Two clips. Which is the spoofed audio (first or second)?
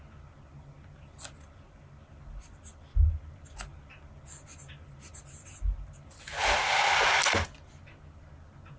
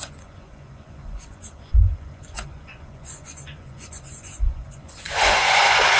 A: second